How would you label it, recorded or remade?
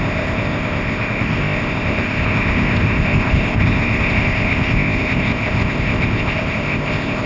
remade